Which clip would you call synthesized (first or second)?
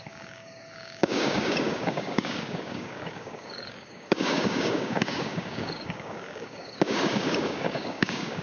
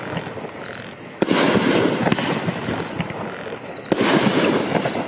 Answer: first